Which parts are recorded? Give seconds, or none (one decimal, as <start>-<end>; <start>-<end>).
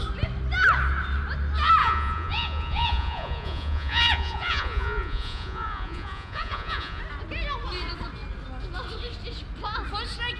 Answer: 0.0-1.8; 7.0-10.4